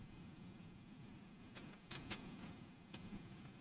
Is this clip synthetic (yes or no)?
yes